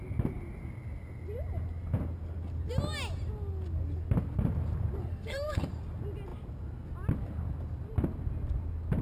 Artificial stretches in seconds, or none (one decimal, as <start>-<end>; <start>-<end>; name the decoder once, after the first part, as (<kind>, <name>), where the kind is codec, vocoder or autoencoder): 5.1-5.7 (codec, SNAC)